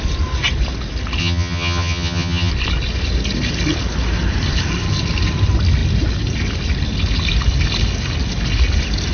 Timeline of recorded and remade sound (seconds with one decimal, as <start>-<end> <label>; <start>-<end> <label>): 0.0-1.2 recorded; 1.2-2.5 remade; 2.5-9.1 recorded